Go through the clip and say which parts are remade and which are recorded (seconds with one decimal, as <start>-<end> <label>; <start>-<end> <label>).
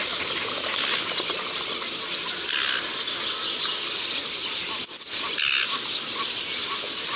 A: 0.0-0.8 remade; 0.8-7.2 recorded